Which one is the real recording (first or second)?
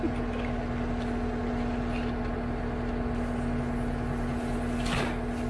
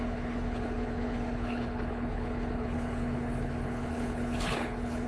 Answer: first